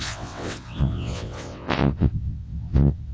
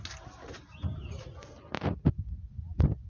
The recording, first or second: second